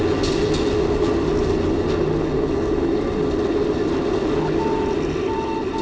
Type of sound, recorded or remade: recorded